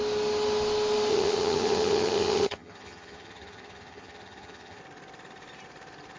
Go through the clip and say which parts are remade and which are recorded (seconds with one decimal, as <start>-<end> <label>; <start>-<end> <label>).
0.0-1.1 recorded; 1.1-4.8 remade; 4.8-6.2 recorded